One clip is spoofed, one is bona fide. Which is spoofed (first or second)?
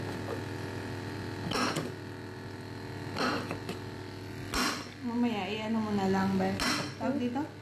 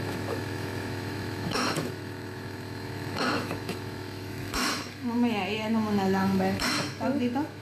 second